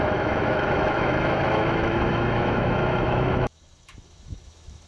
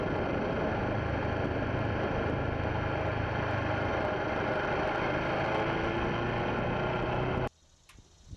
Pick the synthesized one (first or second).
first